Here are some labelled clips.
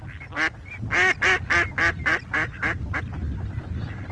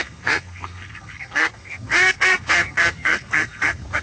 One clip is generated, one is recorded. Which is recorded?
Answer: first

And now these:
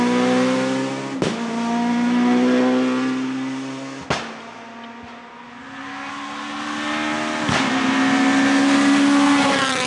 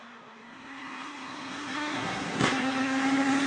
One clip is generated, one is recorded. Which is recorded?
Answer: first